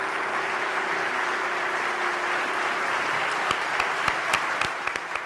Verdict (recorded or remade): recorded